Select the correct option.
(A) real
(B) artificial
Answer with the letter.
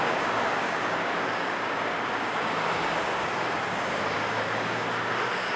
B